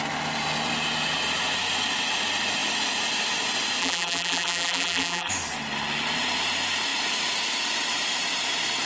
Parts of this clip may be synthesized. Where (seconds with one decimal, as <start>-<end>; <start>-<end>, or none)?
3.8-5.3